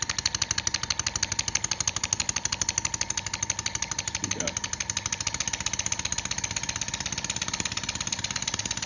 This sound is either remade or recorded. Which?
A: recorded